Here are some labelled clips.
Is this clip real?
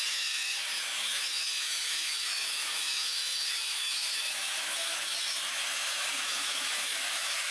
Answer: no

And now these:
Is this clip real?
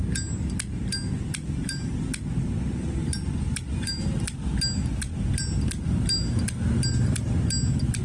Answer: yes